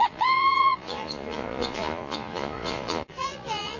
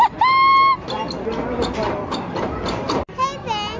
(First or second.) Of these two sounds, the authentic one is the second